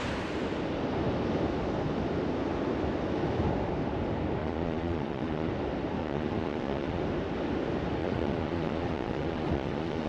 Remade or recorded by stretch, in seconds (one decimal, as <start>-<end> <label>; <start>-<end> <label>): 0.0-4.4 recorded; 4.4-5.5 remade; 5.5-6.0 recorded; 6.0-7.0 remade; 7.0-8.0 recorded; 8.0-10.1 remade